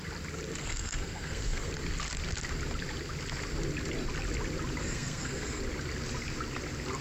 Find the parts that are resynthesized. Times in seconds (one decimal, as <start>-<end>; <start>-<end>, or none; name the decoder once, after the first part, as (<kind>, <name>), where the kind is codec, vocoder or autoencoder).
0.6-1.7 (codec, SNAC); 4.8-5.6